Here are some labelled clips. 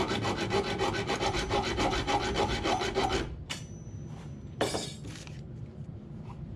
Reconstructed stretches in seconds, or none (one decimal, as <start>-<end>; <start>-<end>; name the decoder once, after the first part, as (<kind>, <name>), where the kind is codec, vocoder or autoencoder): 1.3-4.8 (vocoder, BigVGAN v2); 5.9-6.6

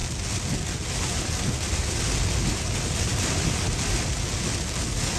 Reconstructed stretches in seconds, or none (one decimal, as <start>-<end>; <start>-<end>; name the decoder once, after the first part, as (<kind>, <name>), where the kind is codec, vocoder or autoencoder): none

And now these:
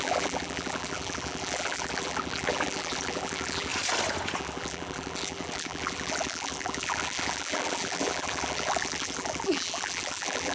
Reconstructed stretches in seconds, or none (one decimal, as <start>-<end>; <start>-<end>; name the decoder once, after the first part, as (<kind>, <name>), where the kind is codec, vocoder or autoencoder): 0.0-3.7 (vocoder, BigVGAN v2); 4.4-10.5